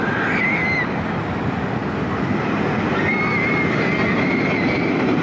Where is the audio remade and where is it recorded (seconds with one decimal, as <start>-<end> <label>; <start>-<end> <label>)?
0.0-5.2 recorded